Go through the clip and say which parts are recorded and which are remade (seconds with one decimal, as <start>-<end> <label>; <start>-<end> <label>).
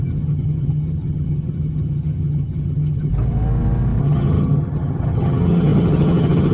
0.0-3.1 remade; 3.1-4.0 recorded; 4.0-6.5 remade